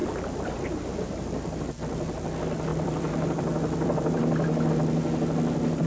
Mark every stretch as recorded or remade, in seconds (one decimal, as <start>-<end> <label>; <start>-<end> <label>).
0.0-1.7 remade; 1.7-2.7 recorded; 2.7-4.7 remade; 4.7-5.9 recorded